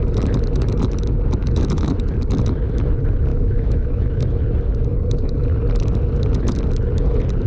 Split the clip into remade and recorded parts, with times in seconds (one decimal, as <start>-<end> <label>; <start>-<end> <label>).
0.0-1.4 recorded; 1.4-1.9 remade; 1.9-3.3 recorded; 3.3-4.2 remade; 4.2-7.5 recorded